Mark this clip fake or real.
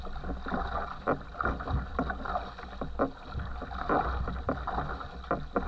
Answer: real